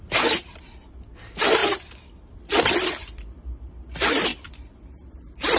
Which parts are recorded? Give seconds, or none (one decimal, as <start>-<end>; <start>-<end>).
1.6-2.3

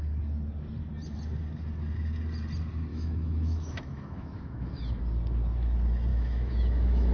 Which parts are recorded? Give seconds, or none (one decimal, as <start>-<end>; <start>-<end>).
0.0-2.9; 5.0-6.1

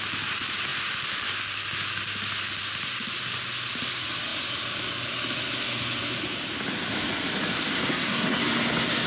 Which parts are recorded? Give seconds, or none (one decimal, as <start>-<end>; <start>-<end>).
0.0-7.9; 8.4-9.1

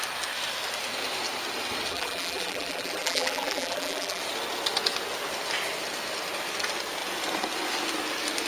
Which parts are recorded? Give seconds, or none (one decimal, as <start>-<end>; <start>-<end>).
0.0-1.9; 4.2-8.5

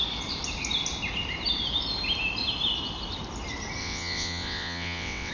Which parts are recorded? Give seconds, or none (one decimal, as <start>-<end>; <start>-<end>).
0.0-3.8

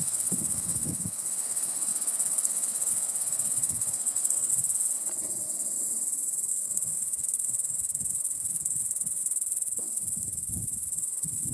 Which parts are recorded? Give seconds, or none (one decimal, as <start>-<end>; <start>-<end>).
4.5-6.5

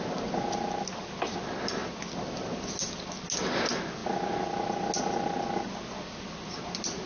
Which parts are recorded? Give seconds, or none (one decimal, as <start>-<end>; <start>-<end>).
0.0-7.1